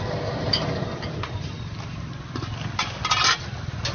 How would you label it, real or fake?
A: real